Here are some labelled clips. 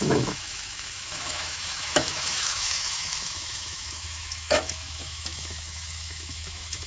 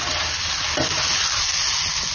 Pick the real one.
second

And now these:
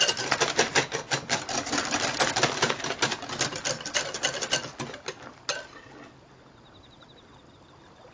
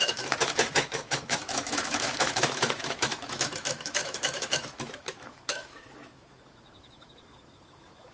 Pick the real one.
first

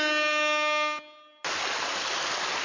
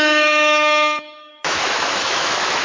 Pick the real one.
first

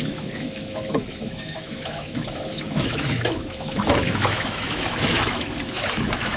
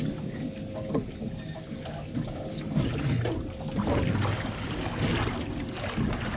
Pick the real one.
second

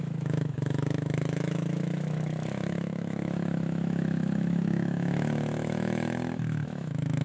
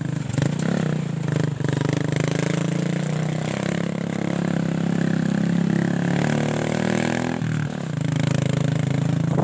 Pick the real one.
second